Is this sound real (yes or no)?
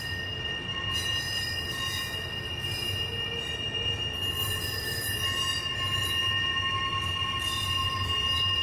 yes